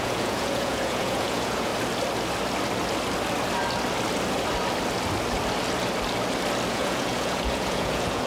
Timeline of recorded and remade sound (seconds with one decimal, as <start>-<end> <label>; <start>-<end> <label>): 0.0-1.7 remade; 1.7-6.7 recorded; 6.7-8.3 remade